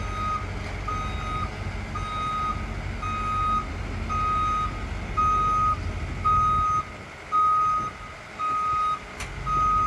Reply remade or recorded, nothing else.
recorded